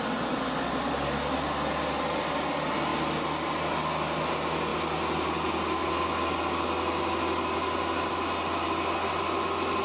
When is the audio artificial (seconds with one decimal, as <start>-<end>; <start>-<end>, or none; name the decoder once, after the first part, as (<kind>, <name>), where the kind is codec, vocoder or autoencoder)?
none